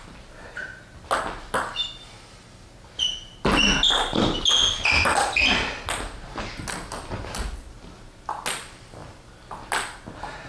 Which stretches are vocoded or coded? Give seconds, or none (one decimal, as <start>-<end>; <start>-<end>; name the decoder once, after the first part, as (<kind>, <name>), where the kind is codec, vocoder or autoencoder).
none